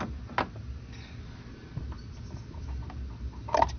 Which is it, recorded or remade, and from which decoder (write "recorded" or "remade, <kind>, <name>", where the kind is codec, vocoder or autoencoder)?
recorded